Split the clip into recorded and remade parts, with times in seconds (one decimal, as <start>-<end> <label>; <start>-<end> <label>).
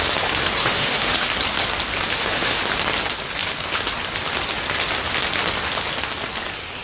0.0-0.6 recorded; 0.6-1.3 remade; 1.3-2.1 recorded; 2.1-2.6 remade; 2.6-6.8 recorded